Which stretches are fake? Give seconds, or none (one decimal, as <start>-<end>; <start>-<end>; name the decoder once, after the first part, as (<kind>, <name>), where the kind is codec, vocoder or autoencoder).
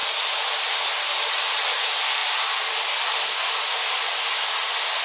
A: none